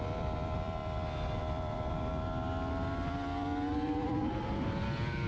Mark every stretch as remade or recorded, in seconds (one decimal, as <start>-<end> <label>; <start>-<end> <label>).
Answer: 0.0-2.1 remade; 2.1-3.7 recorded; 3.7-5.3 remade